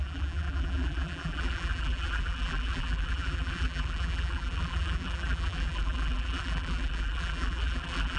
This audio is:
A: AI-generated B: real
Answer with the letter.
A